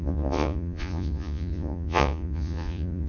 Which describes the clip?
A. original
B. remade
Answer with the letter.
B